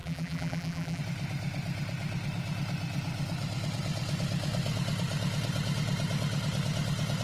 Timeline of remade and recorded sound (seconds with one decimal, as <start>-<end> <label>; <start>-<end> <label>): 0.0-1.0 remade; 1.0-7.2 recorded